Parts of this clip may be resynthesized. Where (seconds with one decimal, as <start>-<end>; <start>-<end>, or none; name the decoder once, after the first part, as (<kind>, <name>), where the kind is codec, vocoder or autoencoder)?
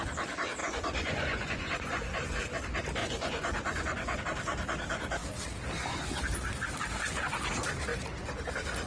0.6-2.4 (vocoder, Vocos); 3.0-4.2